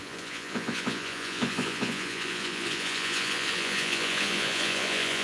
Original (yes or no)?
no